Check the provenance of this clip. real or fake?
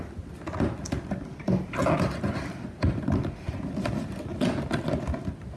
real